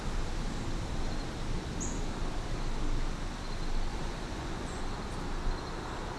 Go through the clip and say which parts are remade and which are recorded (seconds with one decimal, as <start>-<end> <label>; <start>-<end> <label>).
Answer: 0.0-3.9 recorded; 3.9-4.8 remade; 4.8-6.2 recorded